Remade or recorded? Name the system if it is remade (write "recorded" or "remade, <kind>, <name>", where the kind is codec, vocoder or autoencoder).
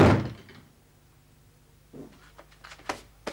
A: recorded